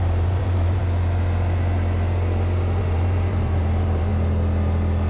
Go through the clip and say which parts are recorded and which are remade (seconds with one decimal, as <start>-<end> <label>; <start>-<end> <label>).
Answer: 0.0-0.8 remade; 0.8-2.8 recorded; 2.8-4.1 remade; 4.1-5.1 recorded